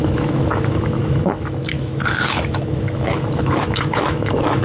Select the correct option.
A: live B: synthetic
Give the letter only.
B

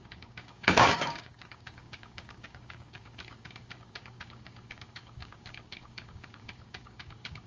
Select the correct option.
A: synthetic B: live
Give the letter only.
A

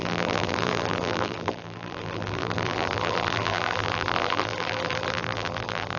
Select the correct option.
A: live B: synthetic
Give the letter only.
B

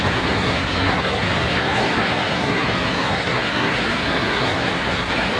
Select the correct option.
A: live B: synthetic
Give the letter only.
B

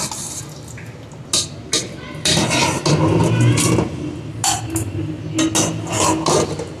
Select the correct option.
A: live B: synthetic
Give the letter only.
A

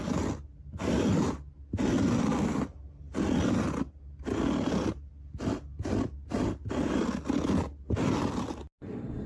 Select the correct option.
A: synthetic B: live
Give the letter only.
B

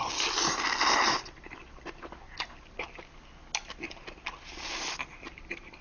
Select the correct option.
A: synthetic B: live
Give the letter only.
B